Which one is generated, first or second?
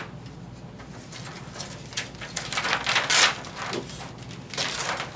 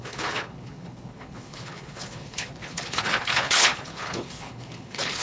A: second